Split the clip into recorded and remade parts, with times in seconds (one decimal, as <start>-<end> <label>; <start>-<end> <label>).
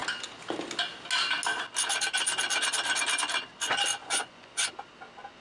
0.0-4.0 recorded; 4.0-4.7 remade; 4.7-5.4 recorded